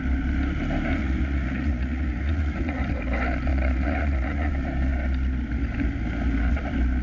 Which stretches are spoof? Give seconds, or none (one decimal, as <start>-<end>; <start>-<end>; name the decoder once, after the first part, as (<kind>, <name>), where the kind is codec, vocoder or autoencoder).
1.0-2.9 (vocoder, Vocos); 3.5-4.5